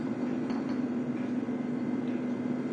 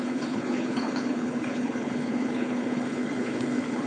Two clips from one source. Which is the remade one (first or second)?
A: second